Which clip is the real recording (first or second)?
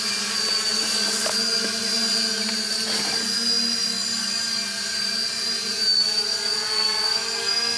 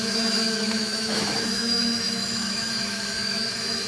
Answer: first